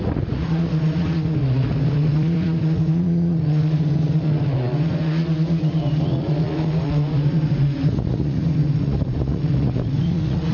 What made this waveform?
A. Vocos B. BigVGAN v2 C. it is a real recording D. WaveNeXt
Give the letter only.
A